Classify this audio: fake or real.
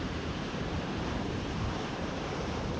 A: fake